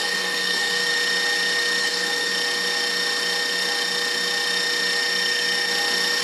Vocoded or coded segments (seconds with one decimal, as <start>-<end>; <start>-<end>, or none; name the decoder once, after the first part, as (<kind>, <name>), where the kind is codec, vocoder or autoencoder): 0.0-0.9 (codec, SNAC); 1.8-2.3